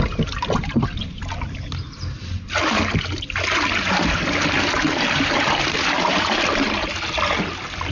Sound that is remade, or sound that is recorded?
recorded